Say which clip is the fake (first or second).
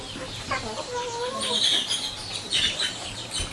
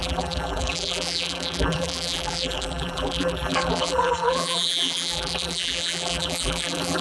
second